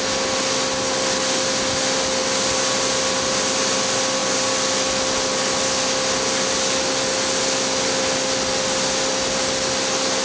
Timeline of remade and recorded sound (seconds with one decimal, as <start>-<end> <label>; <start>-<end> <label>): 0.0-2.2 remade; 2.2-2.8 recorded; 2.8-10.2 remade